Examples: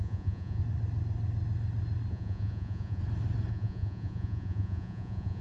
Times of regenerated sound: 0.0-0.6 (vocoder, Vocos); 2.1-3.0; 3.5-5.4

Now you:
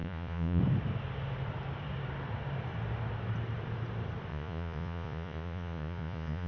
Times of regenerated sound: 0.0-0.6 (vocoder, Vocos); 4.3-6.5

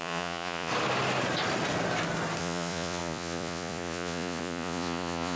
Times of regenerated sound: 0.0-0.7 (vocoder, Vocos); 2.4-5.4

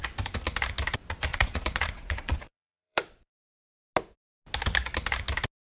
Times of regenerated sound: 1.3-3.3 (vocoder, Vocos)

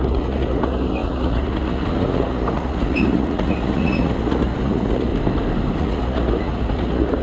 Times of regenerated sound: 0.0-5.1 (vocoder, Vocos); 5.8-7.2

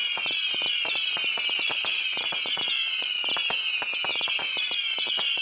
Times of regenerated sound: 0.0-3.2 (vocoder, Vocos); 4.1-5.4

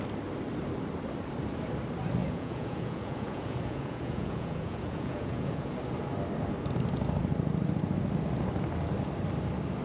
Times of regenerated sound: 2.2-5.8 (vocoder, Vocos)

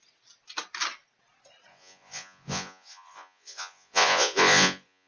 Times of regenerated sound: 1.7-5.1 (vocoder, Vocos)